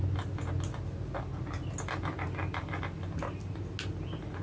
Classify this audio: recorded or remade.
recorded